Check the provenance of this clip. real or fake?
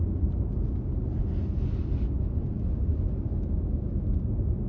real